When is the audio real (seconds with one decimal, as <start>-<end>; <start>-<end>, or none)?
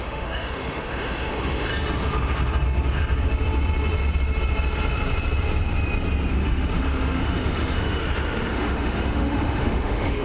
1.7-6.3; 8.0-8.5